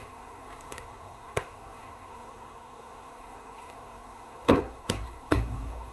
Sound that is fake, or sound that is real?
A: fake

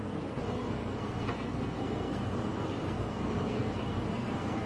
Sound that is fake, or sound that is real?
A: fake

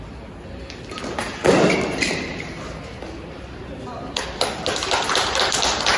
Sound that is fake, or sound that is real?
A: real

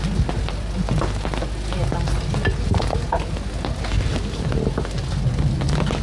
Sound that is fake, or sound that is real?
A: real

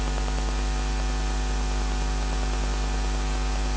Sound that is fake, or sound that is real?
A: real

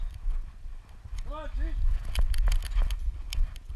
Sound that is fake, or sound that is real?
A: real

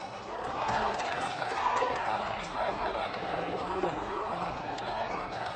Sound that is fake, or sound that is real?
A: fake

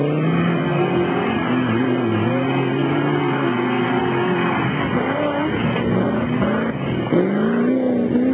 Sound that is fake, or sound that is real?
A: real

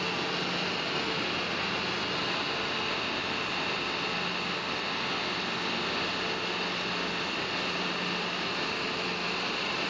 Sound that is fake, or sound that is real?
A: real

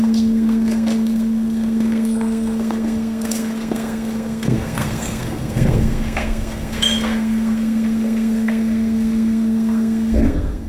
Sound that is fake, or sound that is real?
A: fake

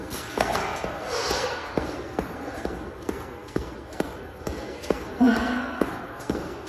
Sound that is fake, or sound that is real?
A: fake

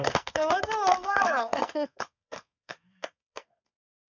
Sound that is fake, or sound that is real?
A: fake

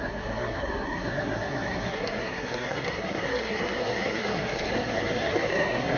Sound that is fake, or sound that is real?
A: fake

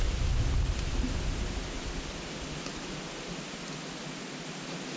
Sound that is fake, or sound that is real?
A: real